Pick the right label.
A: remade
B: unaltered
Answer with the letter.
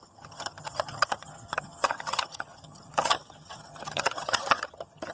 A